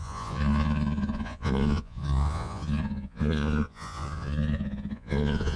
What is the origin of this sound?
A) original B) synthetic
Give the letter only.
B